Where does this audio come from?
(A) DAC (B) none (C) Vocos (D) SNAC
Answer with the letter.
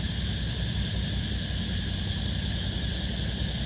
B